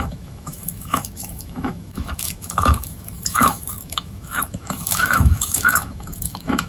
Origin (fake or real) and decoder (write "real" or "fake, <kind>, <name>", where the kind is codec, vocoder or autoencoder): fake, autoencoder, DAC-VAE